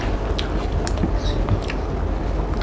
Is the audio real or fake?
real